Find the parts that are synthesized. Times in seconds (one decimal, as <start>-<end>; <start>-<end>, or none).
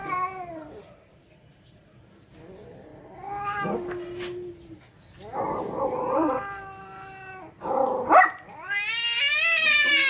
0.0-2.0